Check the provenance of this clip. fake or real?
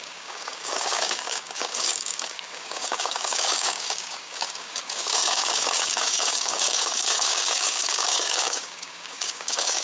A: fake